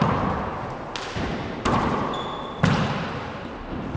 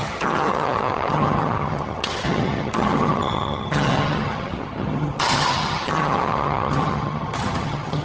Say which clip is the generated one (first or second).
second